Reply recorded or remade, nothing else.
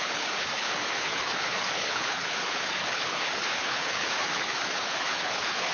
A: remade